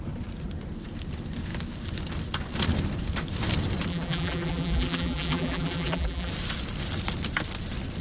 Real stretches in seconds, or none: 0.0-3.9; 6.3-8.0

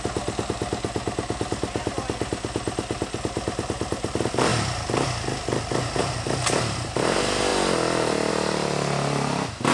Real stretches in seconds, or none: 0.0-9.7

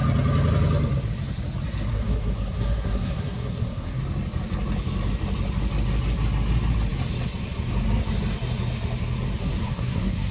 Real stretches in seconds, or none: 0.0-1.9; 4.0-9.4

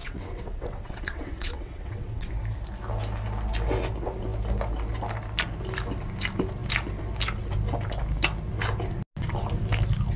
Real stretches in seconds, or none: 2.3-10.2